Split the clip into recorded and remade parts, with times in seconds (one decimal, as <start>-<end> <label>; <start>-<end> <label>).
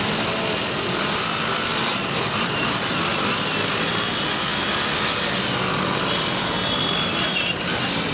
0.0-8.1 recorded